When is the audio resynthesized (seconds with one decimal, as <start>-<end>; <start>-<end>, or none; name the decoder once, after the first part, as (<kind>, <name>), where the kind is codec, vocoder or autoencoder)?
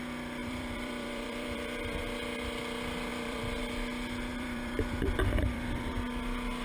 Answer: 0.4-2.0 (vocoder, BigVGAN v2); 3.1-3.6; 4.3-5.9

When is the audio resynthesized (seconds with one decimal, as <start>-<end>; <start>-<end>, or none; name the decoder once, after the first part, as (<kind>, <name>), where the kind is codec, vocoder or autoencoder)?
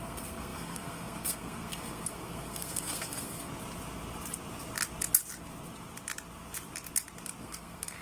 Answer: 0.0-3.5 (codec, SNAC); 7.4-8.0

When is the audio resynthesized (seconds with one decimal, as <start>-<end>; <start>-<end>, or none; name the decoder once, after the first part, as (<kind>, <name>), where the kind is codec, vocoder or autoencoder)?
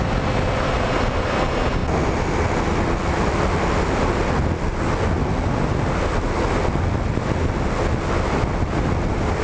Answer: none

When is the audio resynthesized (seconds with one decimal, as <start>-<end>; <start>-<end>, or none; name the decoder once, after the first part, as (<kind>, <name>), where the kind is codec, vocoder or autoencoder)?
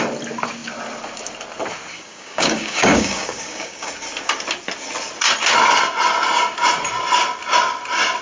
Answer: 1.9-3.9 (codec, DAC)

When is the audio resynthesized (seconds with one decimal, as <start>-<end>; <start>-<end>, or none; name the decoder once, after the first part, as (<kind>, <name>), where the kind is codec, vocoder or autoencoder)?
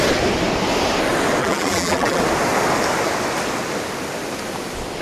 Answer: 1.4-2.2 (vocoder, BigVGAN v2)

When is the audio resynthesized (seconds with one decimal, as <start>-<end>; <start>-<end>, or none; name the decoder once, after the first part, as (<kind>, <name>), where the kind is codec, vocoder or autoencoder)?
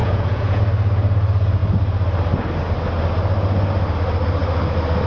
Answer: 0.0-0.6 (vocoder, Vocos)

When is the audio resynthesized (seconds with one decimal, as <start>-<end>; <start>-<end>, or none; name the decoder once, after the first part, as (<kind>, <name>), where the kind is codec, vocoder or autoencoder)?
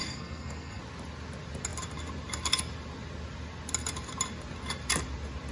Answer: 0.0-0.8 (codec, SNAC)